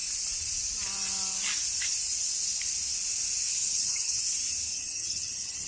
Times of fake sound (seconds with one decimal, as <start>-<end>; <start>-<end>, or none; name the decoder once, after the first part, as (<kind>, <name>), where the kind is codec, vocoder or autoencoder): 3.5-4.2 (vocoder, HiFi-GAN); 4.7-5.7